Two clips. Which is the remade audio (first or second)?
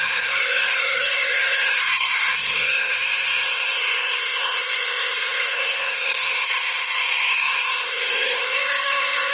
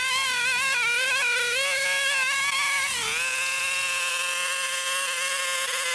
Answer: first